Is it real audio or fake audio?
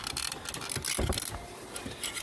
real